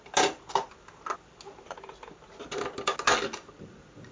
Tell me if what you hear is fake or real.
real